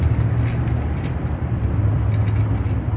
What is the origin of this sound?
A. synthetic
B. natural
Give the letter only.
B